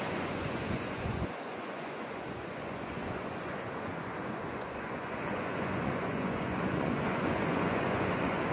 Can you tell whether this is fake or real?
fake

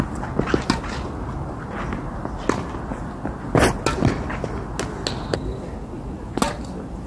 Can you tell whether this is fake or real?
real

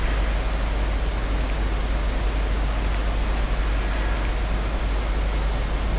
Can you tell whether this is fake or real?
real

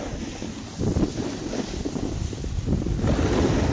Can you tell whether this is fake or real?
real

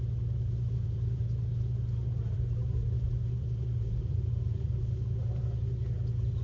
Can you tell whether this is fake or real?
fake